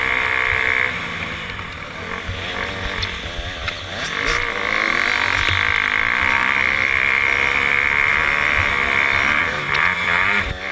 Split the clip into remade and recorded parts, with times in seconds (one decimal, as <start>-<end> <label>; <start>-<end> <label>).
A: 0.0-10.7 recorded